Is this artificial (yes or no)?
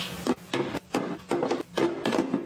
no